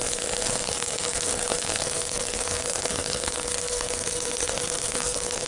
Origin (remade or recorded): remade